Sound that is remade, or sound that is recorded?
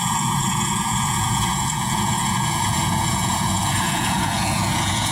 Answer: remade